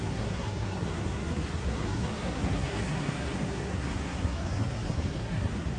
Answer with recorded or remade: remade